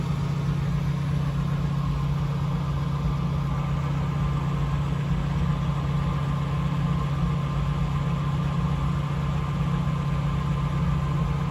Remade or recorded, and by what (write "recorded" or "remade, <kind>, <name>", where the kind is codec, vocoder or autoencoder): recorded